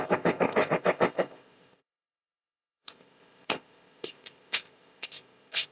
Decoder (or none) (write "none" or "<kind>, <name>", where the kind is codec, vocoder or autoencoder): codec, ZipCodec